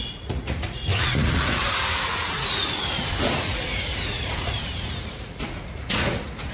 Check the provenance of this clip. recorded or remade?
remade